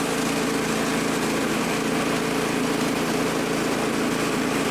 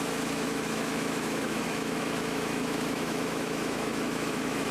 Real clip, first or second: first